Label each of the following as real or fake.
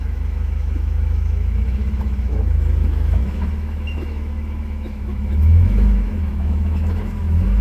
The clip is fake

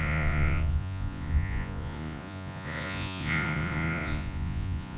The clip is fake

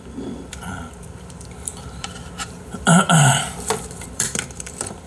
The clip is fake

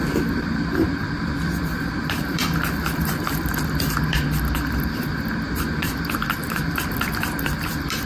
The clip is fake